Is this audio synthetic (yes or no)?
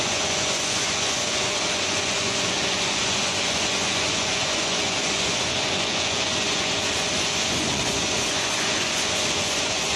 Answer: yes